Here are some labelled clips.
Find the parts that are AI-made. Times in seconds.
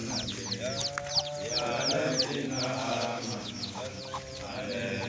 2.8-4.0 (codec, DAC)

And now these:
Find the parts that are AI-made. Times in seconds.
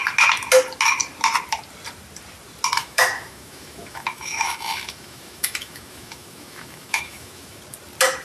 2.8-7.6 (autoencoder, DAC-VAE)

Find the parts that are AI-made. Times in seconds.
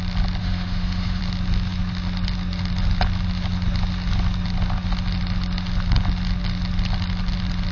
0.4-1.2 (autoencoder, DAC-VAE)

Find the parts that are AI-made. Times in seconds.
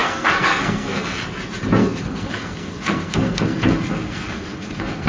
0.0-1.2 (codec, SNAC); 1.8-5.1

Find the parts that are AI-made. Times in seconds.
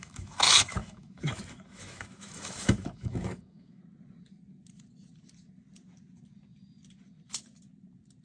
0.0-3.8 (autoencoder, DAC-VAE)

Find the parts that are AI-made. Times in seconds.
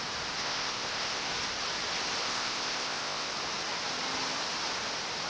0.4-1.3 (codec, ZipCodec); 2.2-3.3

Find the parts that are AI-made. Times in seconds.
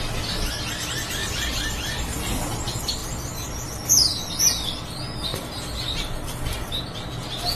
1.2-2.0 (vocoder, BigVGAN v2); 3.0-3.7; 5.3-6.3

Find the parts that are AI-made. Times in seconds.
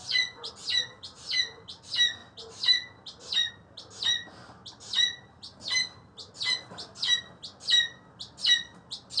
0.0-0.5 (vocoder, Vocos)